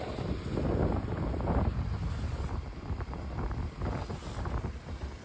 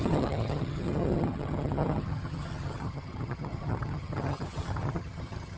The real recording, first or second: first